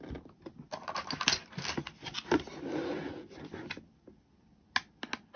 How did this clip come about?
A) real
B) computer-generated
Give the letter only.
A